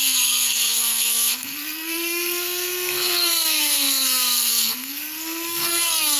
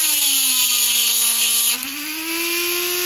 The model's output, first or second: first